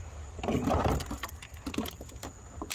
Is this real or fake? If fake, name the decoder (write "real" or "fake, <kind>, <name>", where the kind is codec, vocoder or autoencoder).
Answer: real